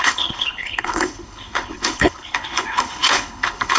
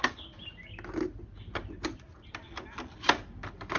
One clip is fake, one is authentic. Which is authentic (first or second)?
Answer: second